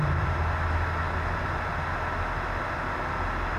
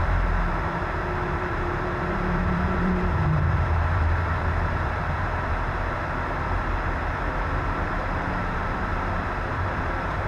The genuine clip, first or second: first